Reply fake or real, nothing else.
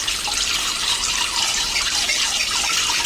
real